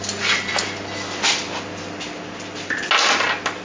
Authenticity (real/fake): real